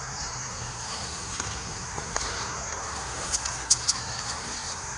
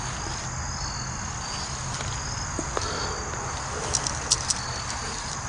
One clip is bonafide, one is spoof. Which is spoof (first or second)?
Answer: first